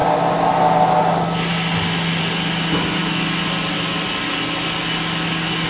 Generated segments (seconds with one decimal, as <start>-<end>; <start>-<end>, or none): none